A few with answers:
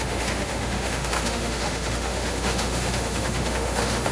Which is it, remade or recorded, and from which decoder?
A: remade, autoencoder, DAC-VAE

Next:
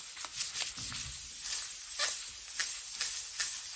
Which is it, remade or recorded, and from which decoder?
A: recorded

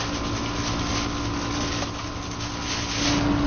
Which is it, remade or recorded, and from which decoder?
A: recorded